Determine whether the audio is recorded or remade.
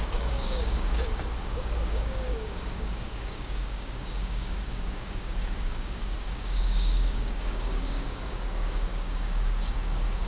remade